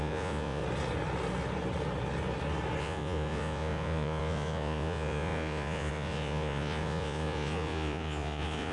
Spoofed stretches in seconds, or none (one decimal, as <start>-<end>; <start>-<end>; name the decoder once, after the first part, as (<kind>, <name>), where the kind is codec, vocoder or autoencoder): 0.0-0.6 (vocoder, Vocos); 2.8-8.7